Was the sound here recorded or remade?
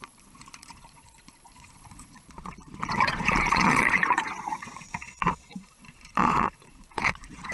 remade